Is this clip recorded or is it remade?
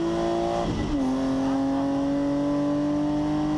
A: recorded